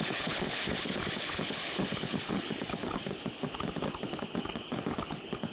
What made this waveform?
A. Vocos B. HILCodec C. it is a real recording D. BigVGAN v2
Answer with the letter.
B